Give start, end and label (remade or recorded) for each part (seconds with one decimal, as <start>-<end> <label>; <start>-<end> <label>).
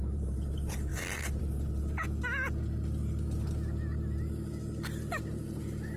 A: 0.0-2.0 remade; 2.0-5.2 recorded; 5.2-6.0 remade